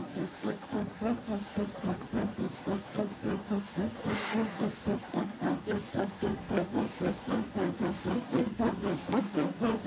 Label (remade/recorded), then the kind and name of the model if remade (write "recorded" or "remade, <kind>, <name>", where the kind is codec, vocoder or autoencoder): remade, codec, SNAC